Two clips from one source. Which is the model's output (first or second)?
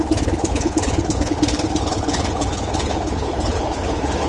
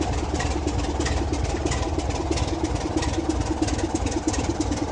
first